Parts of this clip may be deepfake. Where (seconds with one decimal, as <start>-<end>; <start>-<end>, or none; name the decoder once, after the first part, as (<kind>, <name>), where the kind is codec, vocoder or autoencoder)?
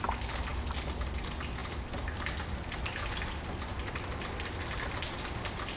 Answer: none